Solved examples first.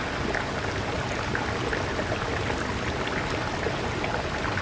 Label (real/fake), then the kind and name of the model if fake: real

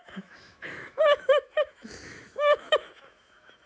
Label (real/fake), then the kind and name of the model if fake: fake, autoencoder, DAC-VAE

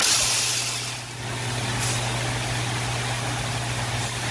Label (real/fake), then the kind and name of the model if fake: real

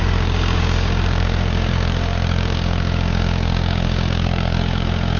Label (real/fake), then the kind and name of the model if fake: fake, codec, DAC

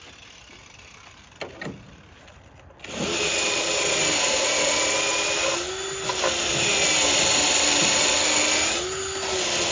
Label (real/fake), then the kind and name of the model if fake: real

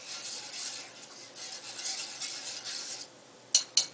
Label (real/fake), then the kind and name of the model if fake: real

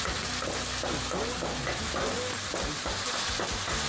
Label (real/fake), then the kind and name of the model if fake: real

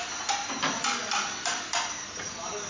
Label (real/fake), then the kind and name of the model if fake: real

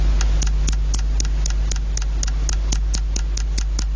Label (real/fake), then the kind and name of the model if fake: real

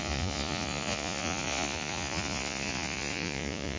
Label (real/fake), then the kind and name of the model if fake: fake, vocoder, Vocos